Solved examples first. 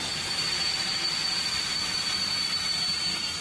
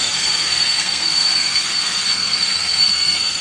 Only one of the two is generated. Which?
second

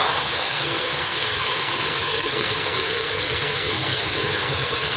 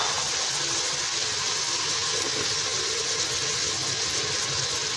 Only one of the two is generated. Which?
first